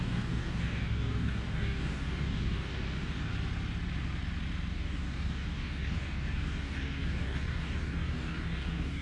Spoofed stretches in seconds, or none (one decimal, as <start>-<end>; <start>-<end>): 0.0-3.3; 4.7-9.0